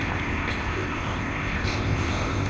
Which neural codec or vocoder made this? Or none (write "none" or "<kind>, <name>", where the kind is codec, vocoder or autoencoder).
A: codec, ZipCodec